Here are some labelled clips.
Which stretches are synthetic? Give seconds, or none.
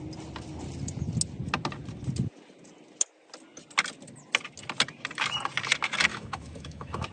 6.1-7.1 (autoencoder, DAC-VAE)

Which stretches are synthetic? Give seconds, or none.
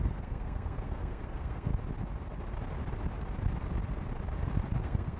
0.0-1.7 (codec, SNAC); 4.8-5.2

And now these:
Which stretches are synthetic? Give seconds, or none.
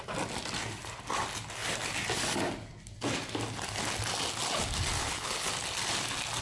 5.0-5.5 (codec, HILCodec)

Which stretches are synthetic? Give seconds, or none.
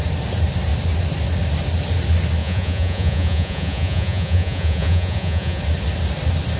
2.4-5.6 (vocoder, Vocos)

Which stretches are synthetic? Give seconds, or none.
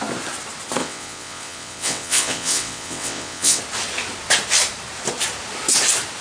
0.8-3.6 (vocoder, WaveNeXt)